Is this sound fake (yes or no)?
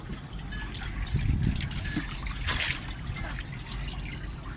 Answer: no